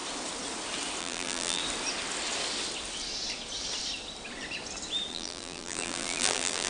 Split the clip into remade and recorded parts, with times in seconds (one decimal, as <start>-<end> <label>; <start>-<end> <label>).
0.0-1.0 recorded; 1.0-1.6 remade; 1.6-5.1 recorded; 5.1-6.7 remade

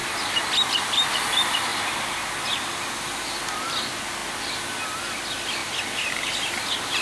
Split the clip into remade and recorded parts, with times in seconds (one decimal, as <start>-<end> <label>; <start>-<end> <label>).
0.0-1.7 recorded; 1.7-2.3 remade; 2.3-5.6 recorded; 5.6-6.6 remade; 6.6-7.0 recorded

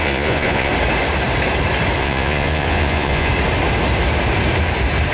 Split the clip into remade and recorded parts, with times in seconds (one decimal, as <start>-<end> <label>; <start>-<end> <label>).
0.0-0.7 remade; 0.7-2.0 recorded; 2.0-3.3 remade; 3.3-5.1 recorded